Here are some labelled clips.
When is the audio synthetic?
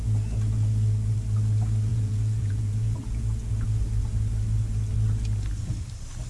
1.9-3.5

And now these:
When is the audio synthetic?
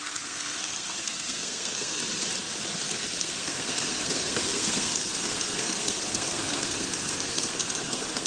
0.0-2.0; 3.2-8.3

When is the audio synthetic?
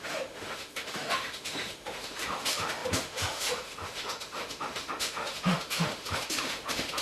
0.0-7.0